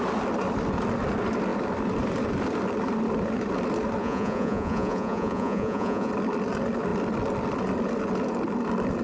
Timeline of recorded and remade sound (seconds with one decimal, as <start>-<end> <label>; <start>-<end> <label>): 0.0-4.0 recorded; 4.0-6.1 remade; 6.1-9.0 recorded